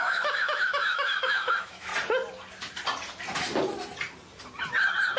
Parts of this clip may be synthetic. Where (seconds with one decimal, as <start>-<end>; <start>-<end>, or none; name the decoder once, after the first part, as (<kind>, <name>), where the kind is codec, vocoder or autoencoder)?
0.0-1.9 (autoencoder, DAC-VAE)